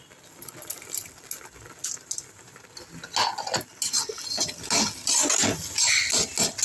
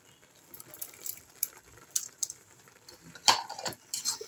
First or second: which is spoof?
second